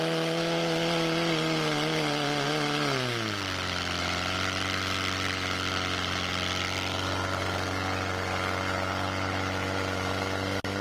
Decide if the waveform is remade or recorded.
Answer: recorded